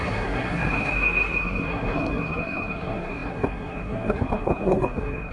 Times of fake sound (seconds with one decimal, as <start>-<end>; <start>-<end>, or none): 0.0-5.3